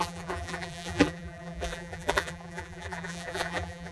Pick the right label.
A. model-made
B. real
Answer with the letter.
A